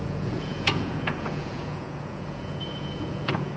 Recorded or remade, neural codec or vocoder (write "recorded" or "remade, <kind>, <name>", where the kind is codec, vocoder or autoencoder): remade, vocoder, Vocos